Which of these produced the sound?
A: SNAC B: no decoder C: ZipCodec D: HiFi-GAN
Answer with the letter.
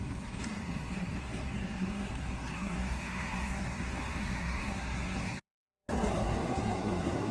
A